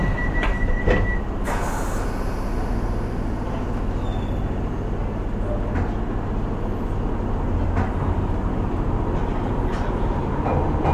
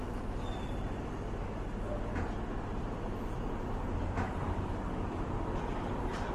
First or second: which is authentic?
first